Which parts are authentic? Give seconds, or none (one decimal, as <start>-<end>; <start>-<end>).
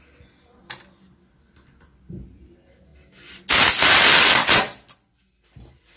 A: 0.0-6.0